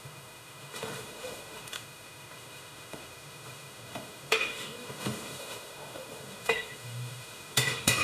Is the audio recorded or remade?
remade